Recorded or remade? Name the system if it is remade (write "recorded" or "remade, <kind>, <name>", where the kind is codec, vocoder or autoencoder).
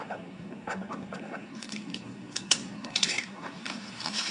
remade, codec, SNAC